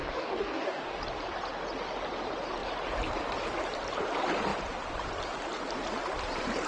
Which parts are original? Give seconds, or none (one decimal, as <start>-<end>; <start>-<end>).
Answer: 1.0-6.7